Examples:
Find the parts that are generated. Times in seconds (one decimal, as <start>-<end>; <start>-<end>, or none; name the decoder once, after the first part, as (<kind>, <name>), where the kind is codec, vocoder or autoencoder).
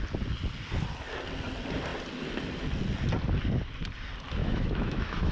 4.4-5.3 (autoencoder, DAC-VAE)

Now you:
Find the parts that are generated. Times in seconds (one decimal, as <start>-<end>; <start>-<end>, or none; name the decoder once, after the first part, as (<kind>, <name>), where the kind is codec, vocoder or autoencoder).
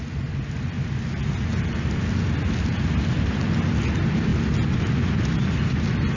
none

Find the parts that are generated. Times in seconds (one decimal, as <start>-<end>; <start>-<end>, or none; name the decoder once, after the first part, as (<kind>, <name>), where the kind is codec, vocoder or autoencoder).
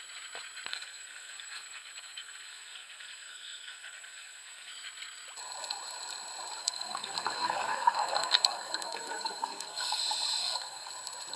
0.7-4.7 (codec, SNAC); 6.6-10.0; 10.4-10.9